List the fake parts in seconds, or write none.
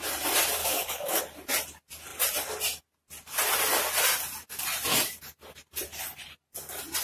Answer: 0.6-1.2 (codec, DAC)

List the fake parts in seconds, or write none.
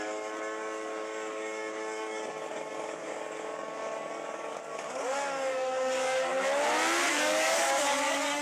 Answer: 0.0-6.3 (codec, DAC); 7.1-8.4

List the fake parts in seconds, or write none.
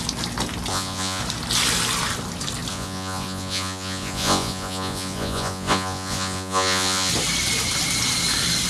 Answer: 0.7-1.2 (vocoder, Vocos); 2.7-7.1